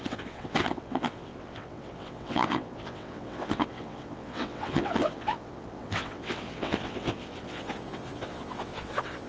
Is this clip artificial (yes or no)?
yes